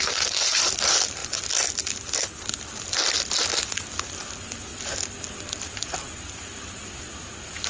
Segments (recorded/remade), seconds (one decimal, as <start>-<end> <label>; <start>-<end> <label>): 0.0-7.7 recorded